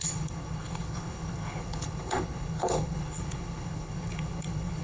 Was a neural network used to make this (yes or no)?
yes